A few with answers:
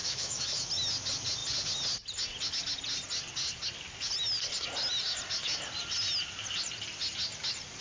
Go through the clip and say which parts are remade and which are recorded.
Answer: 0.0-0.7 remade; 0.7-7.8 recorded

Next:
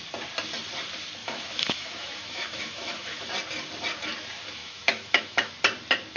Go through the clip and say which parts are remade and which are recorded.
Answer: 0.0-1.2 recorded; 1.2-3.2 remade; 3.2-4.6 recorded; 4.6-5.5 remade; 5.5-6.2 recorded

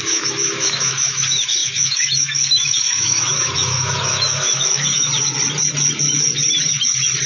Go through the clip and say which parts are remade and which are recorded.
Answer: 0.0-5.1 remade; 5.1-7.3 recorded

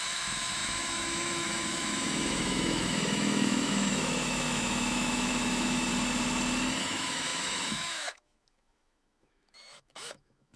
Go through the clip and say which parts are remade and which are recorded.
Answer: 0.0-5.9 remade; 5.9-6.8 recorded; 6.8-10.6 remade

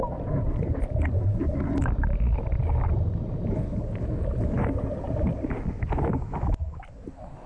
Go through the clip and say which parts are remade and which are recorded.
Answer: 0.0-6.1 recorded; 6.1-6.8 remade; 6.8-7.5 recorded